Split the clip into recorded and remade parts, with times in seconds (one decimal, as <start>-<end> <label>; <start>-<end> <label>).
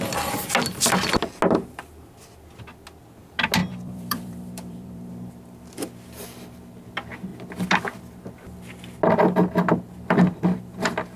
0.0-3.6 recorded; 3.6-5.1 remade; 5.1-11.2 recorded